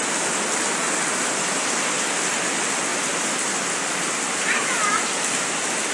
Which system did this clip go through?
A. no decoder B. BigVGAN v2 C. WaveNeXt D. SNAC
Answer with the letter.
A